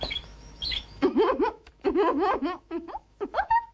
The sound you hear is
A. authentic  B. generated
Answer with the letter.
B